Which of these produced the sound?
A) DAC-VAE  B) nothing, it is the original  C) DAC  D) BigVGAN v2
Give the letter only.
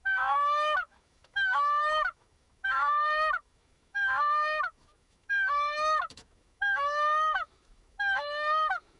A